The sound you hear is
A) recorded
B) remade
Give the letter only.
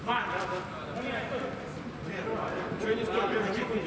A